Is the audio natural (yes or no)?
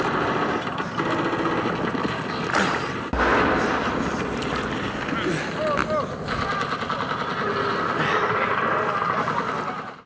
yes